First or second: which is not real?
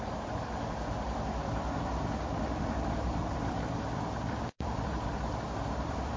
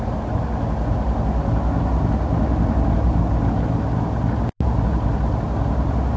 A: first